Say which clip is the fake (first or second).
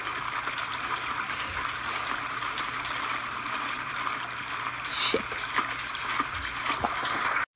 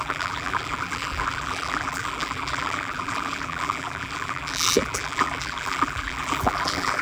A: second